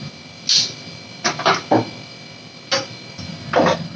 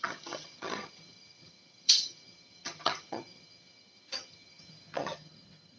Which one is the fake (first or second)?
second